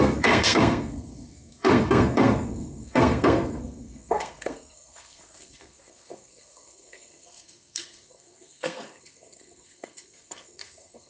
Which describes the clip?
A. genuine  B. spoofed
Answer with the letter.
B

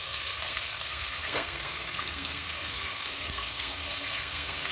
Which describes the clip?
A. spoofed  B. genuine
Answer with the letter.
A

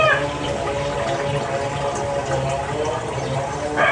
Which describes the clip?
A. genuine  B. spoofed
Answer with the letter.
A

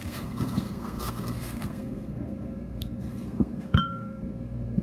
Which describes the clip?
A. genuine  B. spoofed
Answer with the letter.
B